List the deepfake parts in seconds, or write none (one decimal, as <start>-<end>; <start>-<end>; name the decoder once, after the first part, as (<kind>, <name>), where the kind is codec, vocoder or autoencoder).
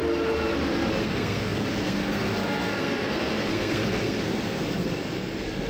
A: 1.0-5.7 (codec, SNAC)